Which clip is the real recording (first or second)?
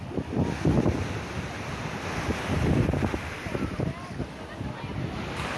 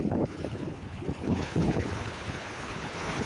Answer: first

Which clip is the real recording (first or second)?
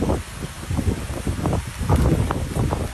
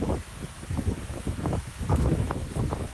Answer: first